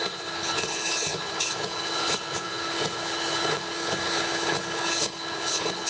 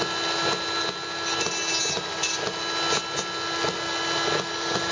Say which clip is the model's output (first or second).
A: first